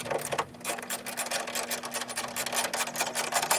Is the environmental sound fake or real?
real